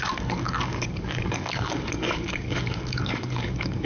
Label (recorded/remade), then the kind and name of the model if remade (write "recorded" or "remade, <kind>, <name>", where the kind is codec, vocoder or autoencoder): remade, codec, DAC